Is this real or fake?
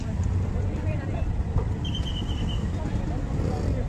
real